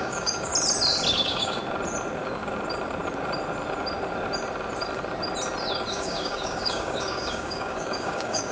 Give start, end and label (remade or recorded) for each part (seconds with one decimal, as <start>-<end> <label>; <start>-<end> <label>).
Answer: 0.0-0.5 remade; 0.5-1.1 recorded; 1.1-1.6 remade; 1.6-5.9 recorded; 5.9-8.5 remade